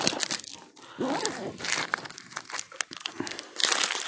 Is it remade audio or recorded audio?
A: recorded